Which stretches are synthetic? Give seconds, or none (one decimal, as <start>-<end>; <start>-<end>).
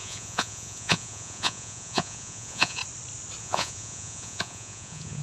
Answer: 0.0-2.8; 3.4-5.2